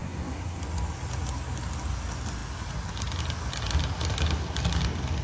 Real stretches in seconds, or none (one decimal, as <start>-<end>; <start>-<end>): 0.6-5.2